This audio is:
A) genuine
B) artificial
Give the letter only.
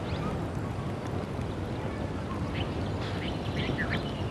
A